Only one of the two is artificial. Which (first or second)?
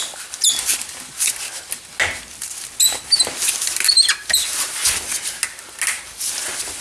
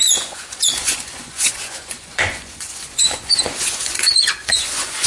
second